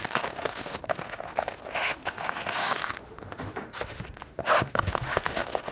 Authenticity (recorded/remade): remade